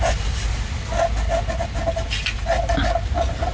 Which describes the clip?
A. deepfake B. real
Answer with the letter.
B